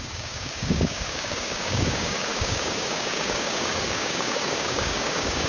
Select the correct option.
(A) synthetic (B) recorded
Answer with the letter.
A